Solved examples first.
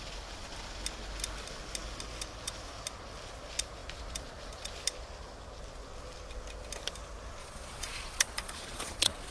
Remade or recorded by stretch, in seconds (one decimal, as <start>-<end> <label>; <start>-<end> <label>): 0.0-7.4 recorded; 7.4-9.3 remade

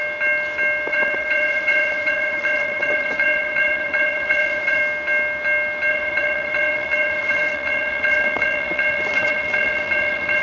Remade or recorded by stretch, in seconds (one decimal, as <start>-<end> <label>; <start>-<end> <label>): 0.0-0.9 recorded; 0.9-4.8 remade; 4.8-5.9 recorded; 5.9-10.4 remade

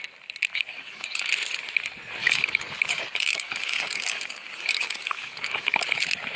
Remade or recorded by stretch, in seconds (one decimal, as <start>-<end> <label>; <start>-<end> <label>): 0.0-0.5 recorded; 0.5-1.3 remade; 1.3-2.2 recorded; 2.2-6.0 remade; 6.0-6.4 recorded

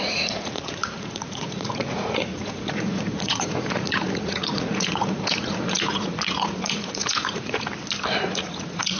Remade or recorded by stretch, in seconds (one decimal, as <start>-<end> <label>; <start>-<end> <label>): 0.0-7.7 remade; 7.7-8.2 recorded; 8.2-9.0 remade